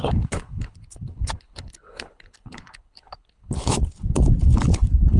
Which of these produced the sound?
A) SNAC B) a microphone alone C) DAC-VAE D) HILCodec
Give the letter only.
D